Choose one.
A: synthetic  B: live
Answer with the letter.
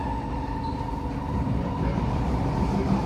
B